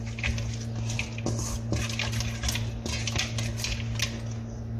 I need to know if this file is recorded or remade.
recorded